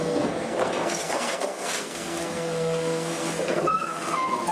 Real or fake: fake